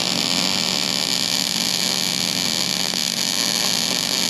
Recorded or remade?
recorded